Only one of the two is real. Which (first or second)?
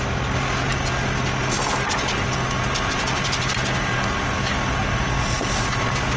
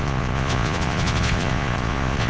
first